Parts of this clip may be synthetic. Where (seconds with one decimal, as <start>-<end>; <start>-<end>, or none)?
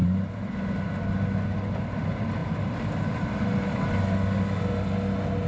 none